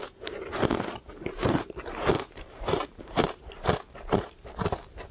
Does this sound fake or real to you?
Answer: fake